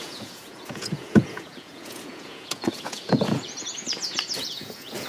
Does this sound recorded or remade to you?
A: remade